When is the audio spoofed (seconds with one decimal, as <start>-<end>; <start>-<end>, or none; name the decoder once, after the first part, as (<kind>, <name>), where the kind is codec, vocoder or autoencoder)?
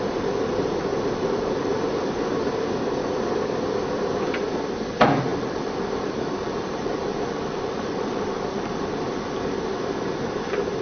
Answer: 0.9-2.1 (vocoder, BigVGAN v2); 5.3-8.9